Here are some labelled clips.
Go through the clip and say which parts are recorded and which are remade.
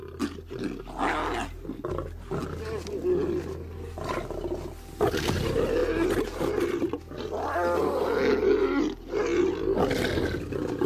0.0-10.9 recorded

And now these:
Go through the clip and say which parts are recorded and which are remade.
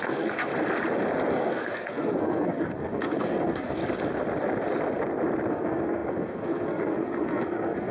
0.0-0.5 remade; 0.5-1.3 recorded; 1.3-3.8 remade; 3.8-5.5 recorded; 5.5-7.9 remade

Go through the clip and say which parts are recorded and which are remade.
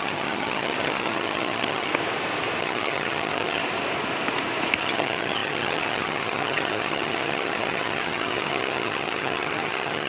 0.0-1.9 remade; 1.9-2.6 recorded; 2.6-3.6 remade; 3.6-4.8 recorded; 4.8-10.1 remade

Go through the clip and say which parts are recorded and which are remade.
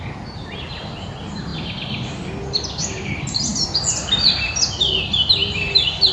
0.0-6.1 recorded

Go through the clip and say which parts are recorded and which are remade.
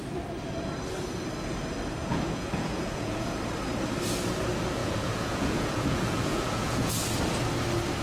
0.0-2.0 recorded; 2.0-3.4 remade; 3.4-4.8 recorded; 4.8-6.9 remade; 6.9-8.0 recorded